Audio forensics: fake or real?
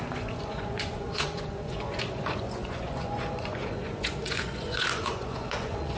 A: fake